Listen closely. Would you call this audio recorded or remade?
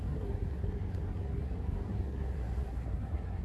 remade